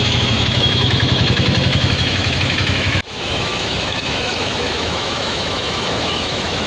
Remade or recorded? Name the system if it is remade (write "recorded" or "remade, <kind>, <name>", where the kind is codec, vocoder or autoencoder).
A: remade, autoencoder, DAC-VAE